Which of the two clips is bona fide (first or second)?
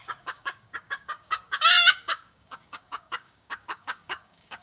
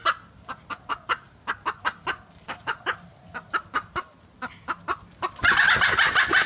second